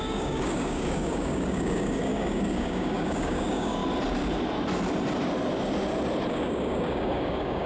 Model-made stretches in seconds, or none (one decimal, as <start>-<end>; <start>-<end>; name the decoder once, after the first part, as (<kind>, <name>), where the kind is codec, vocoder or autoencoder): 0.0-3.8 (codec, DAC); 6.3-7.7